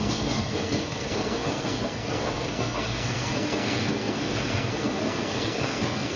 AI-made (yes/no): yes